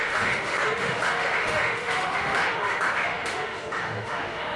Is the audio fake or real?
fake